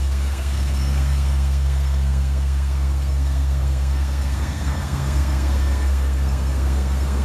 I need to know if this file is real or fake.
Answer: fake